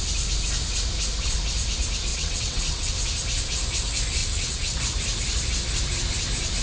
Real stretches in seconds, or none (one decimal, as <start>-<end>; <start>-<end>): 0.0-2.1; 2.9-4.2; 4.8-6.6